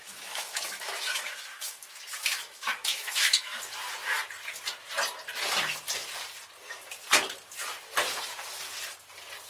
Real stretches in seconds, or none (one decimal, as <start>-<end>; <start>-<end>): 3.6-9.5